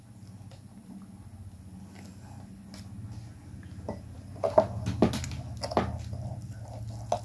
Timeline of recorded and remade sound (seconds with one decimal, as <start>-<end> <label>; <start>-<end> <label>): 0.0-7.2 recorded